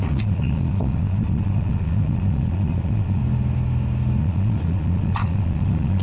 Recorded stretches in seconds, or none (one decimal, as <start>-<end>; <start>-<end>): 3.2-4.2